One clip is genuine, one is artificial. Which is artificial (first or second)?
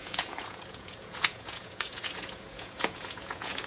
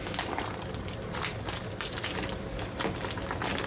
first